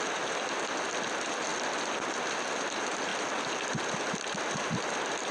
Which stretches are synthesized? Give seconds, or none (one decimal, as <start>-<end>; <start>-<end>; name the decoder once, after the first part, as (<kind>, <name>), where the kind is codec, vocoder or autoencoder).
none